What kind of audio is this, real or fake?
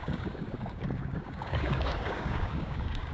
fake